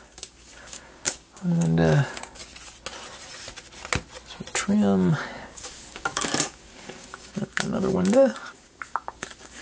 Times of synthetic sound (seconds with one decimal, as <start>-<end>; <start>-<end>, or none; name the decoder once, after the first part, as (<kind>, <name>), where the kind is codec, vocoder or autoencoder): 0.0-2.4 (codec, DAC); 5.1-9.6

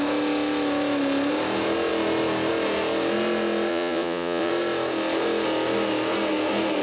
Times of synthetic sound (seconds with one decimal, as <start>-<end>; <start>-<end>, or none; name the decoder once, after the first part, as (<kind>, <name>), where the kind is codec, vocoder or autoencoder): 3.7-4.5 (vocoder, Vocos)

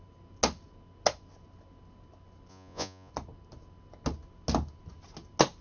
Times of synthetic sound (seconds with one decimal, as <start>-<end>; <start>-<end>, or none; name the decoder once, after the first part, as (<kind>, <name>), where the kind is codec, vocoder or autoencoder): 2.5-3.1 (vocoder, Vocos)

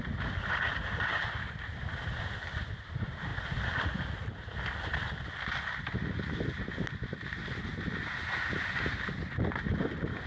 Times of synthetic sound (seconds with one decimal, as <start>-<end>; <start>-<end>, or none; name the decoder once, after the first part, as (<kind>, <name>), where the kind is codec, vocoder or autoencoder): none

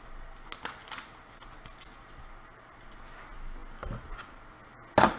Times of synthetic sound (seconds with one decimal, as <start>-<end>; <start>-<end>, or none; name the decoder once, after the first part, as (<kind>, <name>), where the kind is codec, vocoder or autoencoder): none

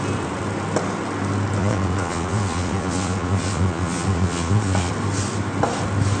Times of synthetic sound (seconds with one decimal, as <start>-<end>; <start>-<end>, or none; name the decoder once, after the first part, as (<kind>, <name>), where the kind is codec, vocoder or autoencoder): 1.6-4.9 (vocoder, Vocos)

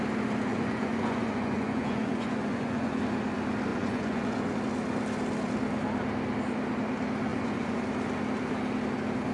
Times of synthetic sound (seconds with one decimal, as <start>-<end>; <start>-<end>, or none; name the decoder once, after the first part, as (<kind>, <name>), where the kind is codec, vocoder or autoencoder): 0.5-3.0 (vocoder, Vocos); 3.7-4.5; 7.3-7.8